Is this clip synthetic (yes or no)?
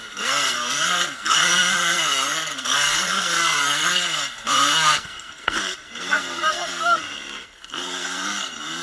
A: yes